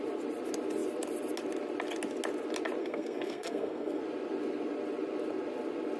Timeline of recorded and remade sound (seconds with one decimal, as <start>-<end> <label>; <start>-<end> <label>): 0.0-2.8 recorded; 2.8-4.0 remade; 4.0-6.0 recorded